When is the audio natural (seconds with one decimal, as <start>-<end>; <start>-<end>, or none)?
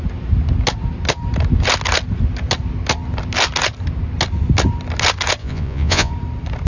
0.0-5.4; 6.1-6.7